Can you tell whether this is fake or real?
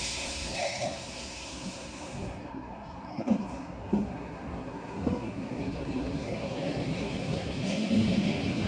fake